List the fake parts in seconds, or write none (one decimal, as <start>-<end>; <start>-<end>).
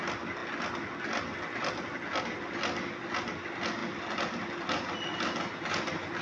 none